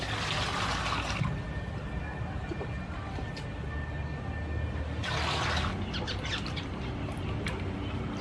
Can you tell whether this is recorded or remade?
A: recorded